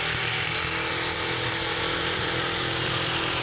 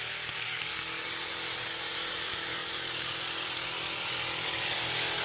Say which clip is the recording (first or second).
first